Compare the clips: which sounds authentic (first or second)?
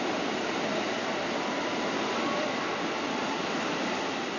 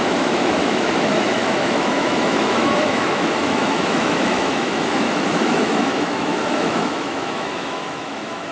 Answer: first